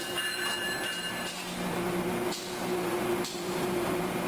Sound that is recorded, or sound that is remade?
remade